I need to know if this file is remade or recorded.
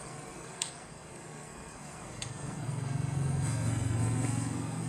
remade